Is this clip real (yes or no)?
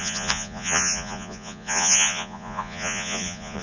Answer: no